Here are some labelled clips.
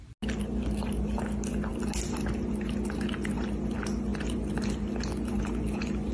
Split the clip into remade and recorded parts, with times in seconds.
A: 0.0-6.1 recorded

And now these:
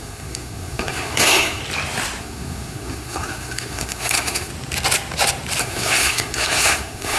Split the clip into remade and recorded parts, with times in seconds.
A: 0.0-1.6 remade; 1.6-2.2 recorded; 2.2-4.5 remade; 4.5-5.6 recorded; 5.6-7.2 remade

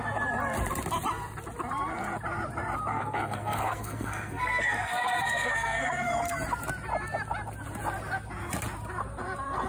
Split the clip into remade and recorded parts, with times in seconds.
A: 0.0-2.9 recorded; 2.9-6.1 remade; 6.1-9.7 recorded